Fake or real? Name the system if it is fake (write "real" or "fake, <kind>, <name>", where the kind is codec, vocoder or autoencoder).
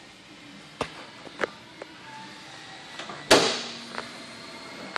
real